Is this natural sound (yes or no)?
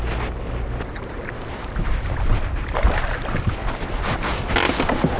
yes